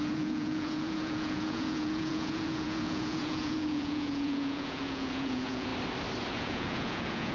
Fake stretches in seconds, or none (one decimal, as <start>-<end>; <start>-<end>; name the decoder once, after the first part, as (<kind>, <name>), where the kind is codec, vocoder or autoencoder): 0.0-5.7 (vocoder, Vocos); 6.3-7.3